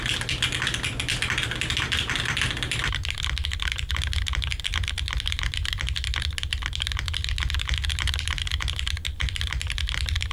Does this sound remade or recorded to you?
recorded